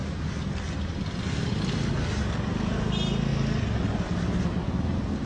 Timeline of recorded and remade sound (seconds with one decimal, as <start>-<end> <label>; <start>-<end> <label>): 0.0-5.3 recorded